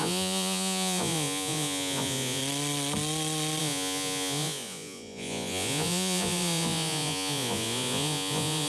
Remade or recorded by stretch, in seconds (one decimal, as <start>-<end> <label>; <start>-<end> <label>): 0.0-2.4 remade; 2.4-3.6 recorded; 3.6-8.7 remade